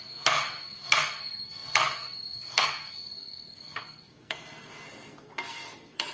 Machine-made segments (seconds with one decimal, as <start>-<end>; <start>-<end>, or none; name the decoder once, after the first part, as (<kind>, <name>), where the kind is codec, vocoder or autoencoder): 0.0-6.1 (codec, SNAC)